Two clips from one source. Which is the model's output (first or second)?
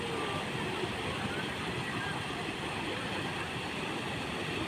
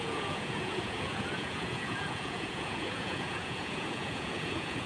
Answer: second